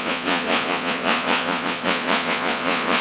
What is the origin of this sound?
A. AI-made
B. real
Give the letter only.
A